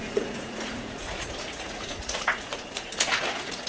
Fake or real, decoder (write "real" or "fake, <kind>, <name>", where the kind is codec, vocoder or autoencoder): fake, vocoder, Vocos